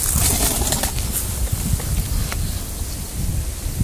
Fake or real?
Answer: real